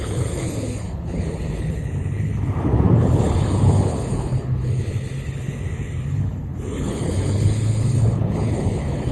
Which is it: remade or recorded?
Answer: remade